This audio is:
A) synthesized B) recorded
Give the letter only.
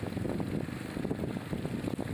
B